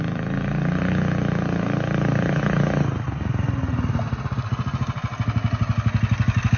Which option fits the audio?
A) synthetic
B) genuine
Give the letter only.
B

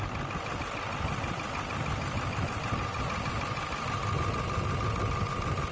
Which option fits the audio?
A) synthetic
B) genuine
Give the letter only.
B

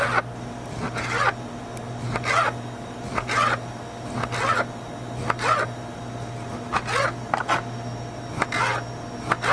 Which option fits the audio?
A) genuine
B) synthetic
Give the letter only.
A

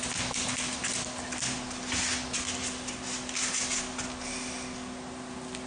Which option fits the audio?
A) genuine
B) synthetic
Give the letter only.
A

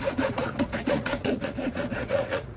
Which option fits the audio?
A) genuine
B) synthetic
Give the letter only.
B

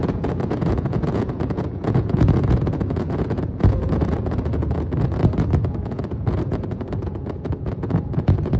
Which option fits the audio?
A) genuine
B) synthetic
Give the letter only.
B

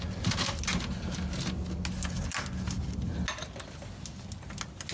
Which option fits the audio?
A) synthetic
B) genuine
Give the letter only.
B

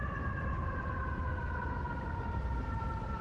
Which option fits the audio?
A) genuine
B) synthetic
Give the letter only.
A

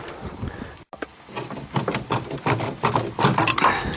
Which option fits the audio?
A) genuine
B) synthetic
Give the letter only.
A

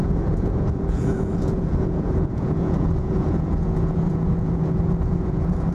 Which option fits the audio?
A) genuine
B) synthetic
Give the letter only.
B